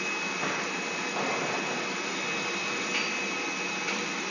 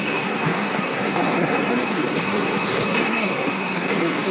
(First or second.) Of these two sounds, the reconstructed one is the second